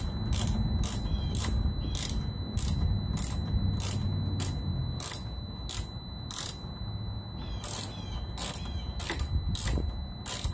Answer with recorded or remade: recorded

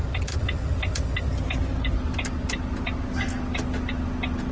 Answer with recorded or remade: recorded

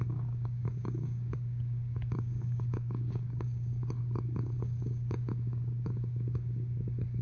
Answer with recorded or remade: remade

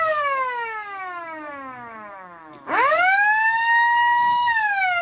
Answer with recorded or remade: remade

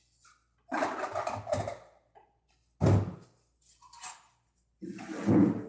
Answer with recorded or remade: recorded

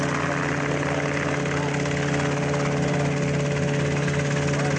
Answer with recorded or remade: recorded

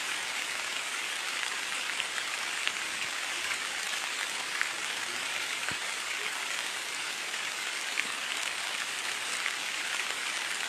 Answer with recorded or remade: remade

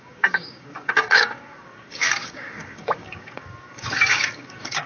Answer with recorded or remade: remade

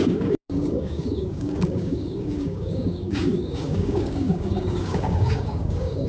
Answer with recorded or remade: remade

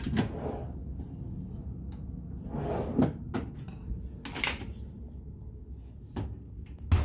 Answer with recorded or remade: recorded